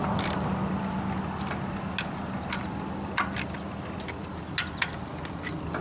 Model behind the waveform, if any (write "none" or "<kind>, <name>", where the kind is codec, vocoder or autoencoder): none